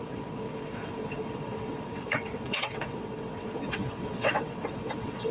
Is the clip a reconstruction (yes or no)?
yes